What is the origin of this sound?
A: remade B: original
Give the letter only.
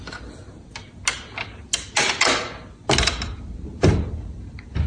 B